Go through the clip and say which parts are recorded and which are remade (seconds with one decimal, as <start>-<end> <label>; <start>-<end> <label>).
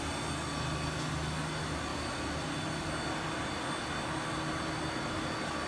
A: 0.0-5.7 recorded